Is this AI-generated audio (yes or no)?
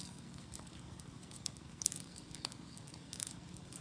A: yes